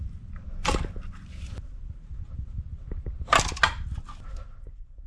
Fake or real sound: real